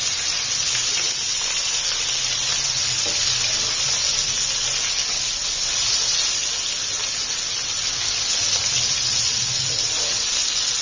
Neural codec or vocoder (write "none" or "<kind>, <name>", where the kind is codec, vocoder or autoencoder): none